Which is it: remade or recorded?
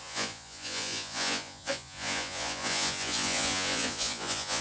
remade